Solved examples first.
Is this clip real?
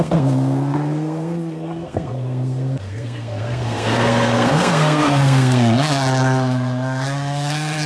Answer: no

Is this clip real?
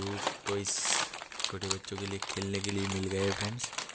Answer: yes